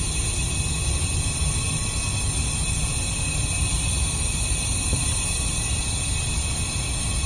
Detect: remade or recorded recorded